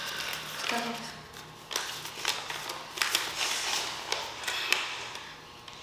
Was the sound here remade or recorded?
recorded